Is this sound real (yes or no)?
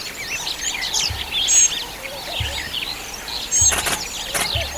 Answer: yes